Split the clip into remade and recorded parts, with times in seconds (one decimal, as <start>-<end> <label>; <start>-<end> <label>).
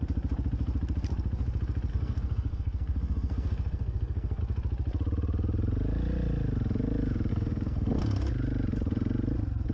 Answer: 0.0-1.9 recorded; 1.9-4.4 remade; 4.4-7.3 recorded; 7.3-8.0 remade; 8.0-9.7 recorded